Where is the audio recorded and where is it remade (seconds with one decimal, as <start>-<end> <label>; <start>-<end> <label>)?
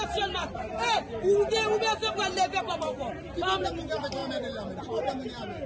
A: 0.0-5.7 recorded